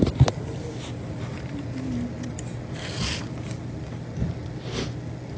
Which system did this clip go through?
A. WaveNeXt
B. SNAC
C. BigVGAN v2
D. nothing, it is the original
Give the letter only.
D